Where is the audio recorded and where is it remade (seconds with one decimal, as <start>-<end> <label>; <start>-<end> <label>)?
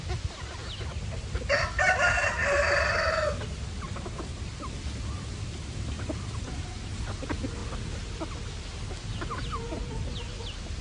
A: 0.0-10.8 recorded